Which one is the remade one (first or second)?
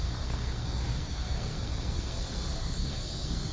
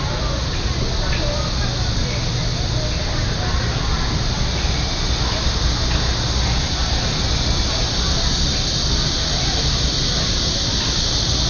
first